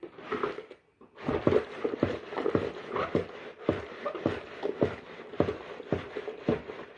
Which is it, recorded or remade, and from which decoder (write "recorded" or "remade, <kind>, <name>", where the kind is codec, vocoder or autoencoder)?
recorded